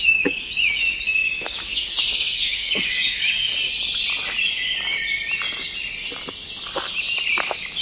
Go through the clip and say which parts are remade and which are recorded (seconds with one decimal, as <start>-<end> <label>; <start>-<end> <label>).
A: 0.0-3.5 remade; 3.5-7.8 recorded